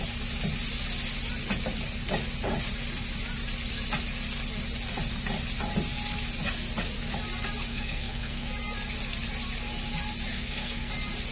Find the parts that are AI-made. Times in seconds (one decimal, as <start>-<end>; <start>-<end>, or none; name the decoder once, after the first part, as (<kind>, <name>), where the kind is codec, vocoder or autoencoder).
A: 7.7-8.5 (codec, SNAC); 10.3-10.9